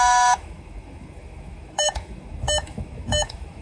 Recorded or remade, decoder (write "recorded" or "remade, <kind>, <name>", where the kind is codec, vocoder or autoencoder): remade, autoencoder, DAC-VAE